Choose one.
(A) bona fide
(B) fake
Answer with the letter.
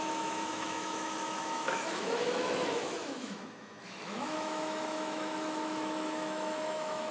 B